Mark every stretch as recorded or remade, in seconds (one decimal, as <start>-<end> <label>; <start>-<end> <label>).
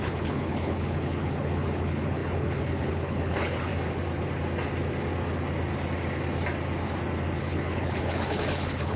0.0-3.7 remade; 3.7-7.4 recorded; 7.4-9.0 remade